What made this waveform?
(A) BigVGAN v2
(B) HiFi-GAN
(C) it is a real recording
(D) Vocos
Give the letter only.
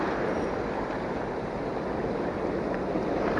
A